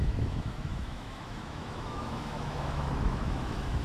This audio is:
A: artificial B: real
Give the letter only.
A